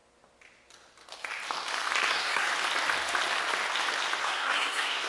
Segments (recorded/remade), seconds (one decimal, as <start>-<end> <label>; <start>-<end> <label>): 0.0-2.1 recorded; 2.1-2.5 remade; 2.5-4.2 recorded; 4.2-5.1 remade